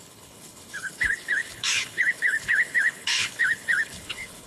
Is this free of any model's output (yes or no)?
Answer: no